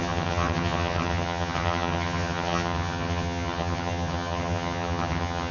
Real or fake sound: fake